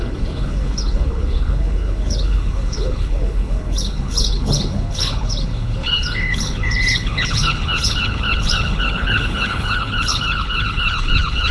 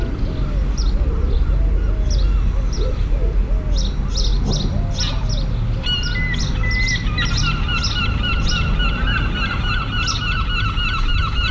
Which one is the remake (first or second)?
first